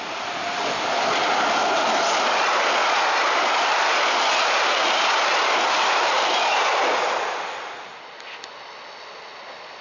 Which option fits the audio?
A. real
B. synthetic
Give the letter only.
A